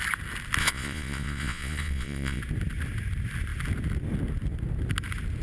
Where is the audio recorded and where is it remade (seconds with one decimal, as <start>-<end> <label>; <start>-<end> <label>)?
0.0-0.6 recorded; 0.6-2.4 remade; 2.4-5.4 recorded

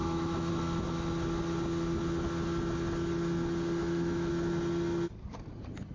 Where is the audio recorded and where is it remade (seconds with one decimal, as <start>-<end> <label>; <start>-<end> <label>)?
0.0-0.5 remade; 0.5-3.8 recorded; 3.8-4.3 remade; 4.3-5.9 recorded

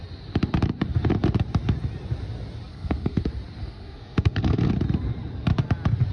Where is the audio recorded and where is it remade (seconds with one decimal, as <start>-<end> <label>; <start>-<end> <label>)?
0.0-2.7 recorded; 2.7-3.2 remade; 3.2-3.6 recorded; 3.6-4.7 remade; 4.7-6.1 recorded

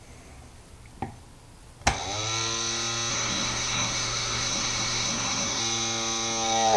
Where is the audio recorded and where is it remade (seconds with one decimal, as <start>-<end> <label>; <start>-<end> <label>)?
0.0-3.1 recorded; 3.1-5.6 remade; 5.6-6.8 recorded